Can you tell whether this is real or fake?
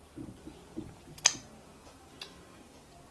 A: real